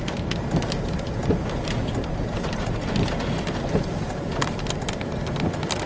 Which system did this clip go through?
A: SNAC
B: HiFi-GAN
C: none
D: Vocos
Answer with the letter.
C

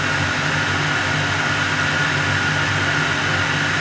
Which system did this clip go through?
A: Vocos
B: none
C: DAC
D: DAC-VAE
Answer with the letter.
B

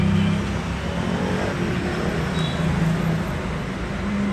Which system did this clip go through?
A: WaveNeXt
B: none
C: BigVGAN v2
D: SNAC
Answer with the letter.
B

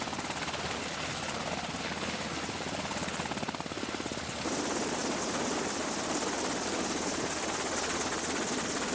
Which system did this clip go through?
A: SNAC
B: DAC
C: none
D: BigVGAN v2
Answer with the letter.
C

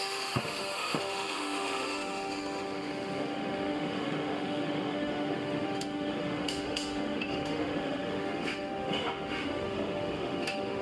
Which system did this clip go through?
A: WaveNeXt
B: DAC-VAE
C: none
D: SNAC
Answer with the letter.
B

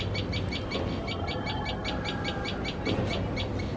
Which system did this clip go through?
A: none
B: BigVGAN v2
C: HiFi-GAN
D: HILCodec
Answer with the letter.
A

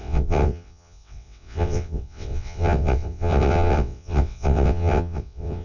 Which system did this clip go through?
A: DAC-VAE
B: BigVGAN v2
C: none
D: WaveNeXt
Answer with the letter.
D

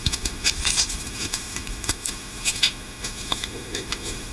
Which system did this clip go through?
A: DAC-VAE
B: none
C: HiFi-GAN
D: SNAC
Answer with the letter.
A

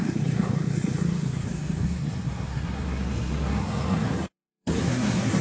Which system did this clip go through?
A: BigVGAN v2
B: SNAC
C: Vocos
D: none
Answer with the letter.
B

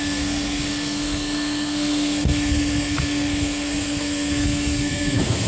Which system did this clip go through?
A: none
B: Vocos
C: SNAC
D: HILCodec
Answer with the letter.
C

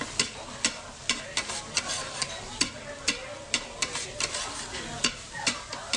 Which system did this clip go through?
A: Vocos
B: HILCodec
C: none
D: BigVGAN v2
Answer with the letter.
C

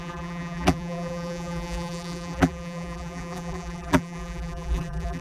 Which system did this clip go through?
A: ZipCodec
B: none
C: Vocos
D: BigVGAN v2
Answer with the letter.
D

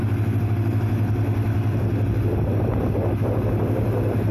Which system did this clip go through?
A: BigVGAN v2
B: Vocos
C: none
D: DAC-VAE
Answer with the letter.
C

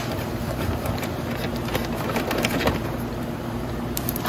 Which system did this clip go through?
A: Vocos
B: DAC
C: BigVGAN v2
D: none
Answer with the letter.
C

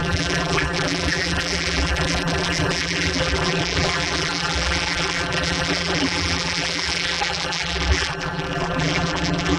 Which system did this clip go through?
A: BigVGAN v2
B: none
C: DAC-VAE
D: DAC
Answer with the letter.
A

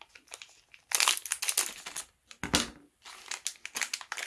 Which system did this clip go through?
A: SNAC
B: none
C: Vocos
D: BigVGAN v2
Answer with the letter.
B